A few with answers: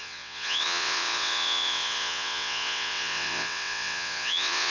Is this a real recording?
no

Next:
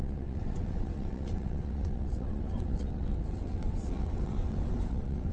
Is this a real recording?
no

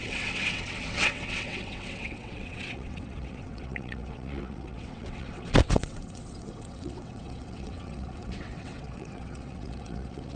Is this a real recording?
no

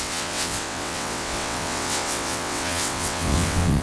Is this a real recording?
no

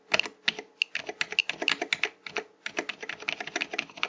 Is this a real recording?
yes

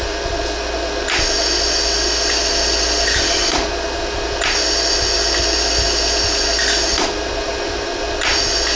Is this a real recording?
yes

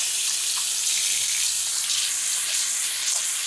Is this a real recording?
yes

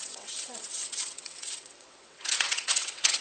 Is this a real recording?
no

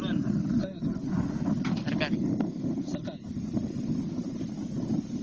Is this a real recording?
yes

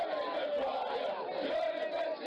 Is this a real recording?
yes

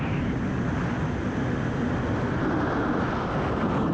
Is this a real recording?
yes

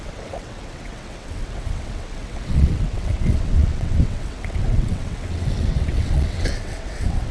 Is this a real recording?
no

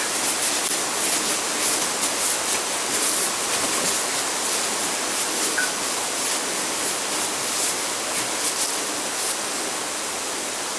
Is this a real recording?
yes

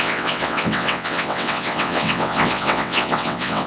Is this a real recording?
no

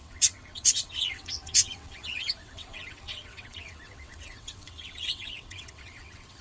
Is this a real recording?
no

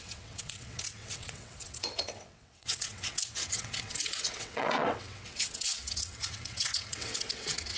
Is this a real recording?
no